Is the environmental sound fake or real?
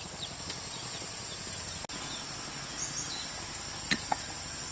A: real